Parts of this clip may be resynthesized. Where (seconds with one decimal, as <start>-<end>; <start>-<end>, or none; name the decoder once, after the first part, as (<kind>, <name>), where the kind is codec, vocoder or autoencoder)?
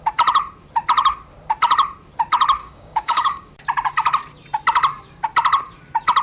2.6-3.5 (codec, DAC)